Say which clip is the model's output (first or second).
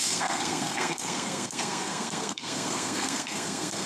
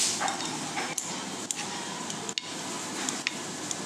first